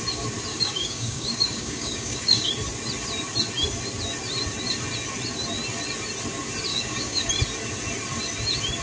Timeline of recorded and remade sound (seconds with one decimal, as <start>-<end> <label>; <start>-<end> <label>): 0.0-0.5 recorded; 0.5-2.5 remade; 2.5-6.7 recorded; 6.7-7.3 remade; 7.3-8.8 recorded